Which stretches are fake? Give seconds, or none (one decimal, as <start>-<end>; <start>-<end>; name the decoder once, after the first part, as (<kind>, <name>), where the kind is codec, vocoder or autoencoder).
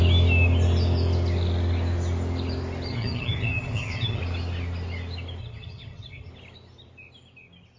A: 2.9-4.2 (vocoder, HiFi-GAN); 5.4-6.3